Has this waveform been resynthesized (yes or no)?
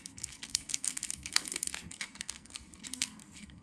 yes